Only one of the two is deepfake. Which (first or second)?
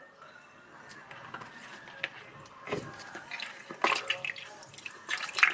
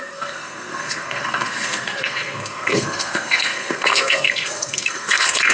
second